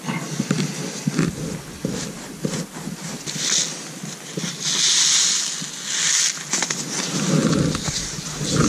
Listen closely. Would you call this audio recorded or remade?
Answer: recorded